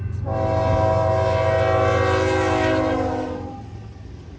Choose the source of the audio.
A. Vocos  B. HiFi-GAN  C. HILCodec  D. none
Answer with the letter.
D